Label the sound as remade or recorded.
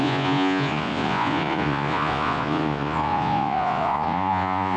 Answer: remade